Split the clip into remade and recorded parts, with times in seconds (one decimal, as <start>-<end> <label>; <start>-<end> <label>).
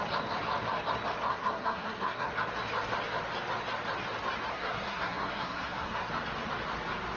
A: 0.0-1.3 recorded; 1.3-2.3 remade; 2.3-4.5 recorded; 4.5-6.1 remade; 6.1-7.2 recorded